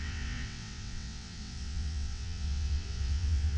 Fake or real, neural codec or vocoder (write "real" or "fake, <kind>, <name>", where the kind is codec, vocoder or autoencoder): fake, vocoder, WaveNeXt